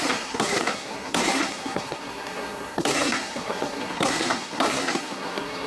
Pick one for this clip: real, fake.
fake